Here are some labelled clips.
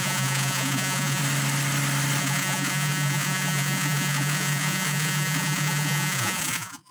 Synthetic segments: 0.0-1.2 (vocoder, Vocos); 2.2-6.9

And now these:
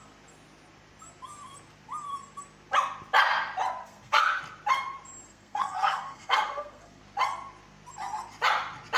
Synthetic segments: 3.8-4.4 (codec, SNAC); 5.3-7.0